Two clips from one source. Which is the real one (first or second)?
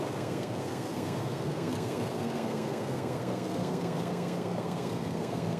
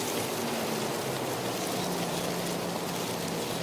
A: second